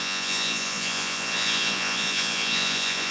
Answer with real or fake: fake